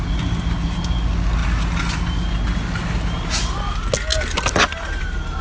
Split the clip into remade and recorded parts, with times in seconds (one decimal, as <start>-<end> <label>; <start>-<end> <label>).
0.0-5.4 recorded